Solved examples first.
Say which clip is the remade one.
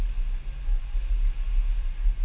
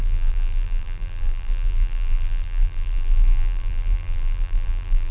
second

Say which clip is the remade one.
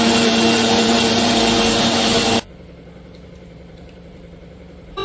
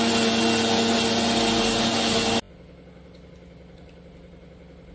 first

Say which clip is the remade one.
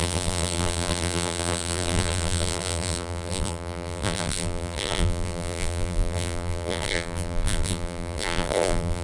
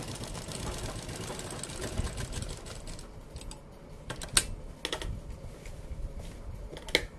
first